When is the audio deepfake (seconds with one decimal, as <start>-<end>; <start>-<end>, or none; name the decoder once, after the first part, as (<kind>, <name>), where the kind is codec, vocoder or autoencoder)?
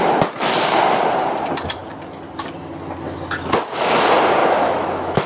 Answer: 4.4-5.3 (autoencoder, DAC-VAE)